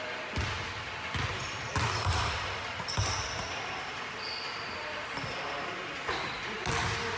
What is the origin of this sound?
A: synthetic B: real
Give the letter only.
B